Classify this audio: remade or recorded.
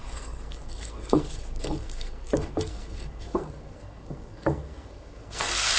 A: remade